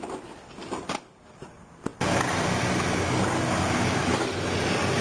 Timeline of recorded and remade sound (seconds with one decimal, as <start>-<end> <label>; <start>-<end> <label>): 0.0-5.0 recorded